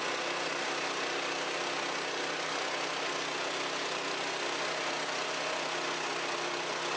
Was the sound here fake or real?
real